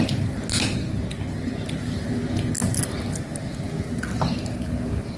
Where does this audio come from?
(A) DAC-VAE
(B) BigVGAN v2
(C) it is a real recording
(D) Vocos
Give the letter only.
C